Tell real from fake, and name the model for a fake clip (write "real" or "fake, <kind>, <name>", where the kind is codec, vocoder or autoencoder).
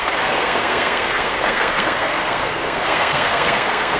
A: fake, codec, SNAC